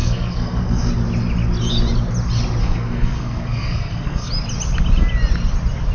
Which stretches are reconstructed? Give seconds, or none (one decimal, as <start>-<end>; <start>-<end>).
0.0-0.9; 2.6-4.3